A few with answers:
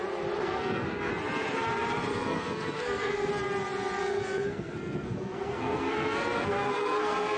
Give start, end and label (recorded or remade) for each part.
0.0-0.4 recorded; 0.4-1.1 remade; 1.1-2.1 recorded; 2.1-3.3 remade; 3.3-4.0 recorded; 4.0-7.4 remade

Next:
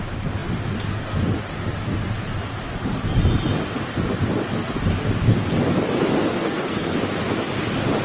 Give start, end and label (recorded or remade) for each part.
0.0-6.3 recorded; 6.3-7.0 remade; 7.0-8.0 recorded

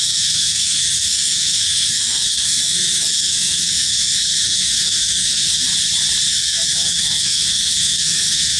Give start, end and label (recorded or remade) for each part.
0.0-5.7 remade; 5.7-6.3 recorded; 6.3-8.6 remade

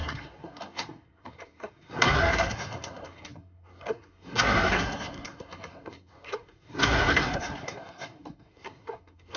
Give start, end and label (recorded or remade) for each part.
0.0-9.4 remade

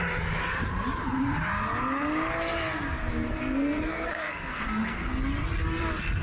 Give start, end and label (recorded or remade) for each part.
0.0-3.1 recorded; 3.1-5.1 remade; 5.1-6.2 recorded

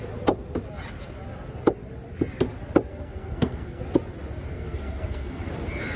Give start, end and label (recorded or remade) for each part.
0.0-2.9 recorded; 2.9-3.8 remade; 3.8-4.4 recorded; 4.4-5.5 remade; 5.5-6.0 recorded

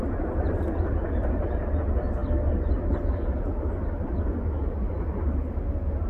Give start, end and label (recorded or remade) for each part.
0.0-6.1 recorded

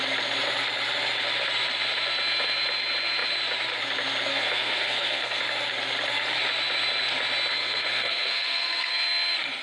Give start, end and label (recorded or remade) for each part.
0.0-4.3 recorded; 4.3-5.4 remade; 5.4-7.5 recorded; 7.5-8.9 remade; 8.9-9.6 recorded